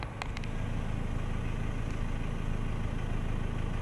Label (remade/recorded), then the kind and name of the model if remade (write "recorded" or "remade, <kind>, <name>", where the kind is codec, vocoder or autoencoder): recorded